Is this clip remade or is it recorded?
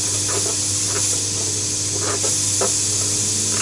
recorded